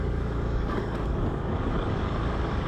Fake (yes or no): yes